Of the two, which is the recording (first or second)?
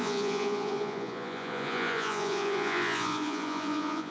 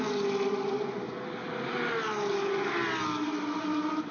second